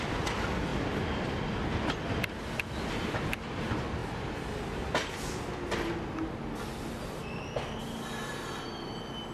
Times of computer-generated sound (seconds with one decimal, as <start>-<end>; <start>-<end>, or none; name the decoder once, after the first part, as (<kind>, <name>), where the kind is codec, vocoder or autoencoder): none